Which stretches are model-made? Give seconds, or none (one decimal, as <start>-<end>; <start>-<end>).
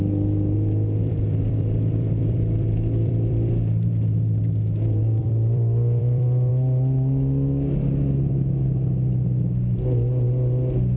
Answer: 1.0-3.5; 5.2-6.5